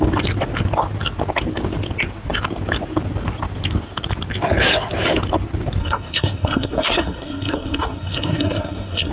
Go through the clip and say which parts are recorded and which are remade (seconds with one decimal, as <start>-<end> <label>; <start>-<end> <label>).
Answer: 0.0-5.8 recorded; 5.8-9.1 remade